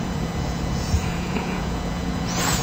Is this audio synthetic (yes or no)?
yes